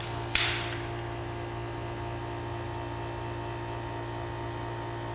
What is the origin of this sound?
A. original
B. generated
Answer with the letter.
A